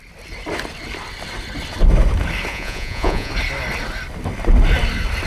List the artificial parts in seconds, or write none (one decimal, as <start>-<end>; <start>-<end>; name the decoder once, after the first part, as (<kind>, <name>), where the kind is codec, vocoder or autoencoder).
2.5-3.3 (vocoder, Vocos)